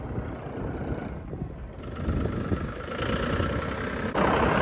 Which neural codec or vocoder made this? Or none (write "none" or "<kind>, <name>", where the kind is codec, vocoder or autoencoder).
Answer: none